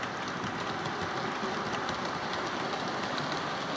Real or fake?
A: real